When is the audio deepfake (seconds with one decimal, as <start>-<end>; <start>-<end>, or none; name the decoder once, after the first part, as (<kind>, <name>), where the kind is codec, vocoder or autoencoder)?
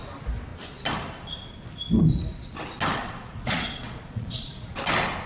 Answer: 3.0-4.5 (vocoder, Vocos)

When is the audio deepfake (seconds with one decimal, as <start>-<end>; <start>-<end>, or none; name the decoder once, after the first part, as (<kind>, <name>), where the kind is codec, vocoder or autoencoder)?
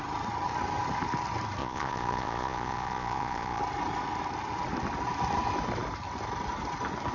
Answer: 1.6-3.6 (vocoder, Vocos)